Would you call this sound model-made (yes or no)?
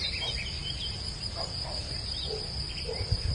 no